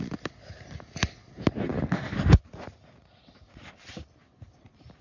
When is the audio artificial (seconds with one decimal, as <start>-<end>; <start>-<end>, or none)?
none